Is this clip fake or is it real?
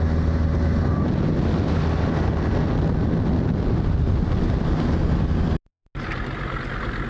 real